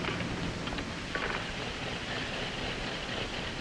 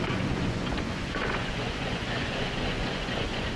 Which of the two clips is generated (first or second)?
second